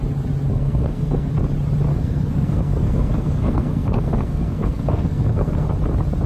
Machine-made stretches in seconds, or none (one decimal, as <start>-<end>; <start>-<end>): 0.5-1.3; 1.9-5.7